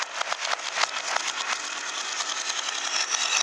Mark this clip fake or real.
real